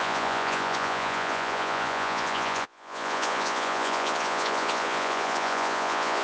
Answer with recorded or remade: remade